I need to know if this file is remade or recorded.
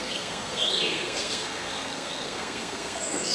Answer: remade